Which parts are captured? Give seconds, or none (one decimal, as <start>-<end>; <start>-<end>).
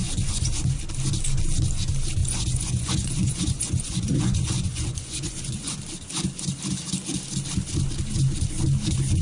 0.8-2.2; 5.8-9.2